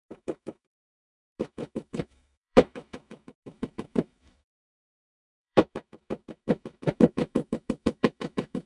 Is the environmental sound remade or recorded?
remade